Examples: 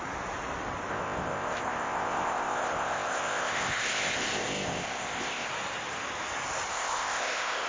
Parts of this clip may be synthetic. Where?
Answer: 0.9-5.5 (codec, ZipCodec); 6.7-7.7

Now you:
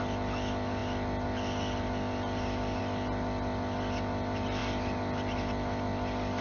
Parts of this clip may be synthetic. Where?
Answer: none

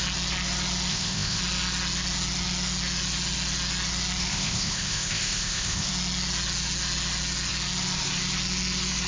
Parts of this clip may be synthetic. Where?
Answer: 0.9-1.4 (codec, ZipCodec); 4.3-5.9